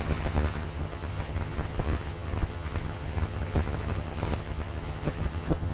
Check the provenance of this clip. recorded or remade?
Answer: remade